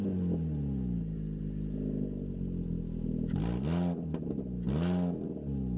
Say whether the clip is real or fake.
real